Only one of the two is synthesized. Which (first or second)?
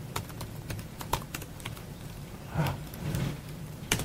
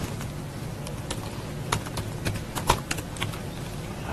first